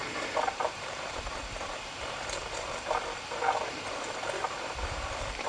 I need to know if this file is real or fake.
fake